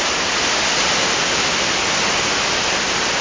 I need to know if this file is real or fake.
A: real